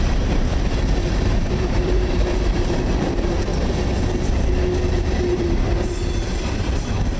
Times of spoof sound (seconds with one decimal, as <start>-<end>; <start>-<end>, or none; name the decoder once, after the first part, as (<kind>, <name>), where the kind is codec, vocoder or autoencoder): 0.0-3.5 (vocoder, BigVGAN v2); 4.9-7.2